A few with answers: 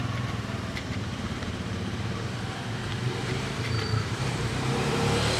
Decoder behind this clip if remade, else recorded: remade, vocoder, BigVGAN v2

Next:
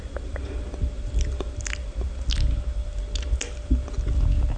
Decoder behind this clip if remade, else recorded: recorded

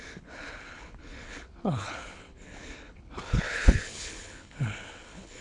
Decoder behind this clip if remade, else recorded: remade, codec, HILCodec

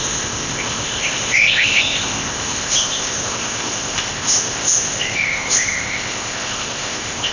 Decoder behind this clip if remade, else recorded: remade, codec, ZipCodec